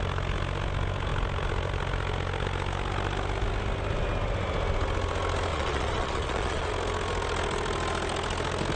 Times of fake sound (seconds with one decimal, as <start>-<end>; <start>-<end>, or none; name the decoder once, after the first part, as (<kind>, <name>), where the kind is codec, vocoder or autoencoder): 5.5-6.7 (vocoder, Vocos)